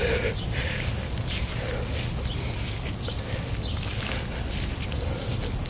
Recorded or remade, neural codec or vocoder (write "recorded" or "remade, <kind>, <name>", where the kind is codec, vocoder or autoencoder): recorded